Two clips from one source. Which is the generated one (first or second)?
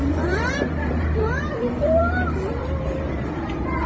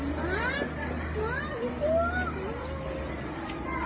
first